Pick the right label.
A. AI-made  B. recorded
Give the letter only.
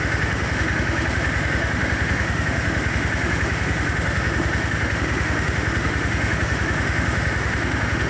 A